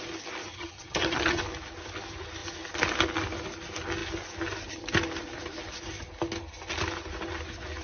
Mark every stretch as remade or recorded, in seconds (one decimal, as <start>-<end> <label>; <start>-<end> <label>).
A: 0.0-0.5 recorded; 0.5-1.4 remade; 1.4-7.8 recorded